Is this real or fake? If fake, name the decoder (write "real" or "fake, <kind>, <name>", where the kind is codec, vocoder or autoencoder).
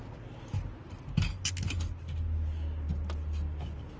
real